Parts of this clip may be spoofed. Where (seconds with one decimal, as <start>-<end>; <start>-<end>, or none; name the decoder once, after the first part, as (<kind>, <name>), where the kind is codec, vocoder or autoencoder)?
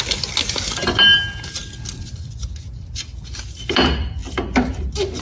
none